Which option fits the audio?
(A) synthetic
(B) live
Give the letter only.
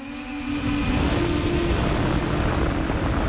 B